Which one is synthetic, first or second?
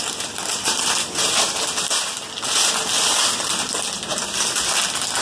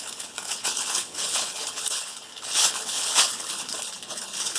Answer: second